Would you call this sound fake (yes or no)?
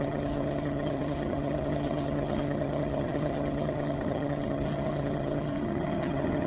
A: yes